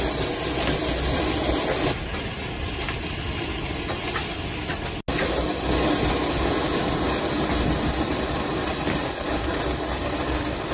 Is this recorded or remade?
recorded